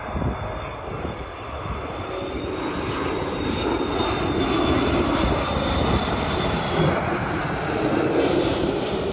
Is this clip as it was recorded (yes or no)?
yes